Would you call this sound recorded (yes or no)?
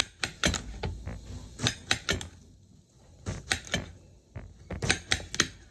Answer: yes